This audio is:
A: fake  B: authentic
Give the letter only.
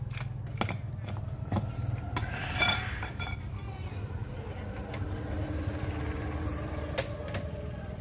B